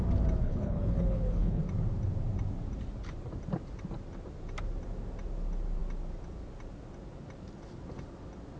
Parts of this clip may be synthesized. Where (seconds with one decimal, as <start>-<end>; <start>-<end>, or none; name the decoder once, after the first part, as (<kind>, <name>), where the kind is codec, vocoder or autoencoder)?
0.4-1.6 (codec, HILCodec)